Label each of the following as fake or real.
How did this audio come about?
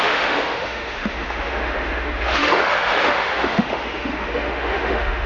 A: fake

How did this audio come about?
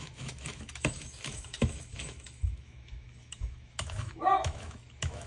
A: fake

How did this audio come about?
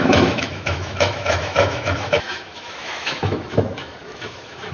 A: fake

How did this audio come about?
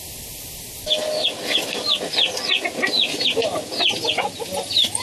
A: real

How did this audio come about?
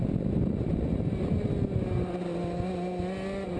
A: real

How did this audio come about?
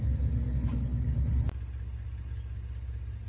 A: real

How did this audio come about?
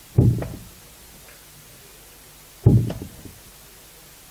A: real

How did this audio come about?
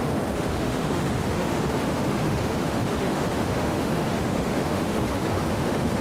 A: fake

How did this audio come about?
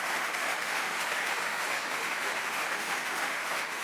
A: fake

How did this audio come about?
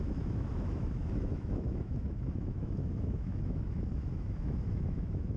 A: fake